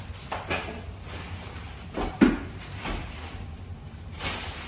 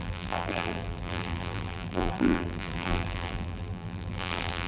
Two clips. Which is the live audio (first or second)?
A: first